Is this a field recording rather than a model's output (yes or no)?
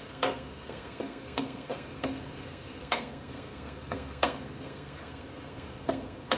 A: no